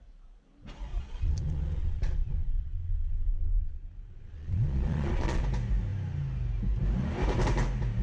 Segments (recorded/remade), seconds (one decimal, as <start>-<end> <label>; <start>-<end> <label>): 0.0-0.9 recorded; 0.9-5.4 remade; 5.4-8.0 recorded